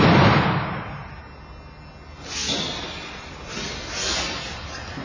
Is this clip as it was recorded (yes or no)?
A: yes